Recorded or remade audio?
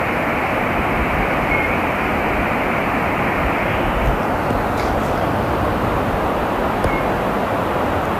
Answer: recorded